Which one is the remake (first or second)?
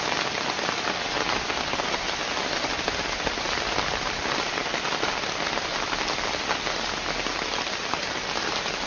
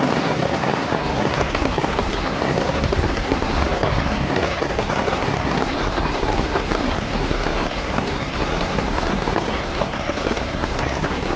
second